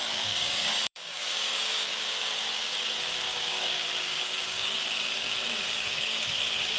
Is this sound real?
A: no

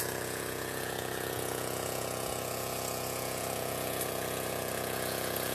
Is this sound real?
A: no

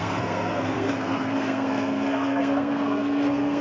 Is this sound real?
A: no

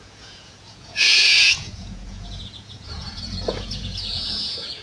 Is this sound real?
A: no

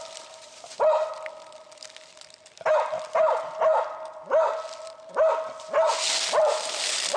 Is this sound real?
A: yes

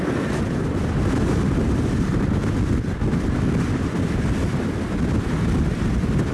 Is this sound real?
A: yes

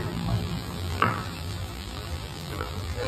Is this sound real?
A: no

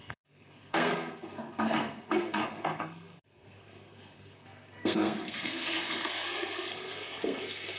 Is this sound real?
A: no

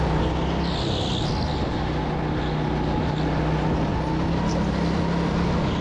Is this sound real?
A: yes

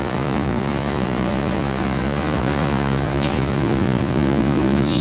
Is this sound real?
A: no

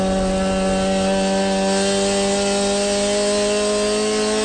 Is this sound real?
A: yes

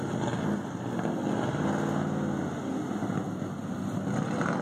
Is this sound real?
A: yes